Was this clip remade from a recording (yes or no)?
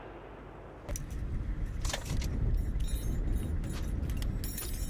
no